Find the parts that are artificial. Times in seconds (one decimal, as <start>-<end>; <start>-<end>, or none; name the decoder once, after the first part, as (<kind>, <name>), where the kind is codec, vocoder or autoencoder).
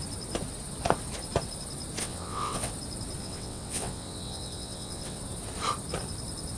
2.0-2.7 (vocoder, WaveNeXt); 3.2-5.2